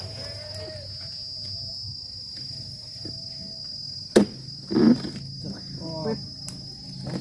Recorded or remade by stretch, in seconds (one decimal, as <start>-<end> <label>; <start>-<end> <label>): 0.0-7.2 recorded

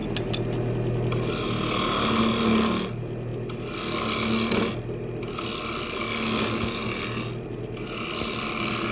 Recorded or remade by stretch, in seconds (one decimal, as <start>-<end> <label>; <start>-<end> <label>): 0.0-8.9 recorded

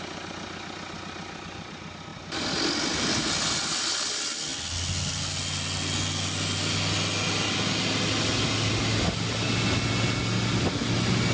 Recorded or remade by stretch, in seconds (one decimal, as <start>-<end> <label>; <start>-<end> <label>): 0.0-11.3 recorded

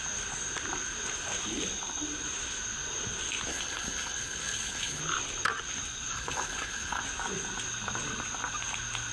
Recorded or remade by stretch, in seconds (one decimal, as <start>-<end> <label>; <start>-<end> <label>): 0.0-3.5 recorded; 3.5-5.0 remade; 5.0-6.1 recorded; 6.1-7.0 remade; 7.0-9.1 recorded

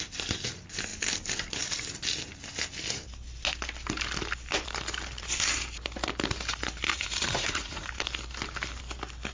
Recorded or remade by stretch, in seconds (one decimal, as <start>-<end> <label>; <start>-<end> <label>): 0.0-6.9 recorded; 6.9-7.9 remade; 7.9-9.3 recorded

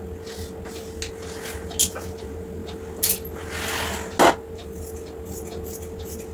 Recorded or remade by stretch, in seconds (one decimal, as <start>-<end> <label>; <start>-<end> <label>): 0.0-6.3 recorded

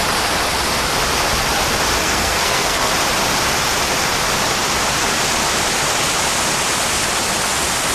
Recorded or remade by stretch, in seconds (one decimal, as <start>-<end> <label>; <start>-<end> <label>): 0.0-2.0 recorded; 2.0-2.9 remade; 2.9-7.9 recorded